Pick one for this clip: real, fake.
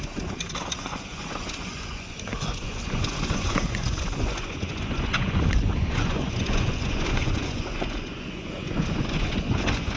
fake